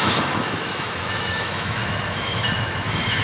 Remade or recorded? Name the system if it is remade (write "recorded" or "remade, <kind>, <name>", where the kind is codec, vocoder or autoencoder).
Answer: remade, autoencoder, DAC-VAE